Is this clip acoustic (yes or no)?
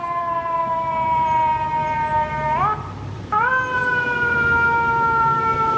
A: no